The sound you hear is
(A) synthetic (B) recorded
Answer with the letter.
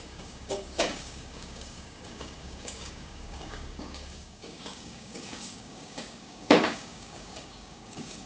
A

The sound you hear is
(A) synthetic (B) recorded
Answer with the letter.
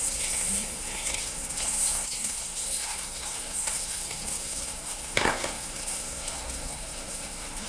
A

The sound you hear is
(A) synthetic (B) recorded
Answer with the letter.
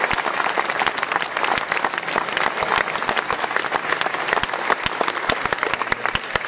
B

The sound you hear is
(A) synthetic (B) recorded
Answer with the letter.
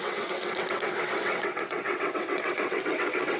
A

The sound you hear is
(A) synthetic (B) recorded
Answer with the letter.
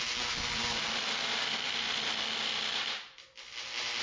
B